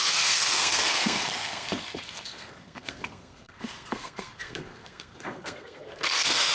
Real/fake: fake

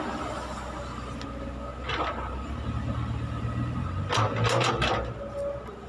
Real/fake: real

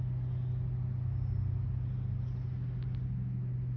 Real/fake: real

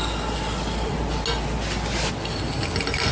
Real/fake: real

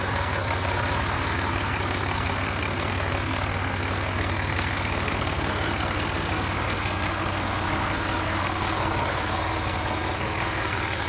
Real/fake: fake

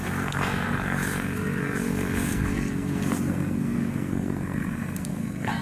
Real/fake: fake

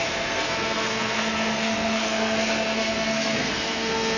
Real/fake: fake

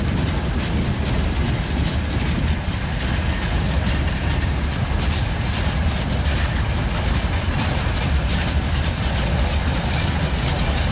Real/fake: real